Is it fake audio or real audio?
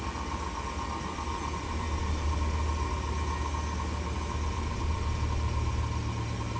real